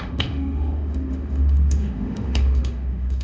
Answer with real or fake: fake